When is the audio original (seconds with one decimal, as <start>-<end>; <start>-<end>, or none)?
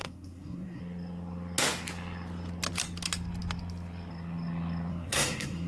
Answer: 0.8-4.9